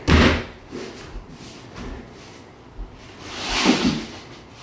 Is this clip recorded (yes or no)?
yes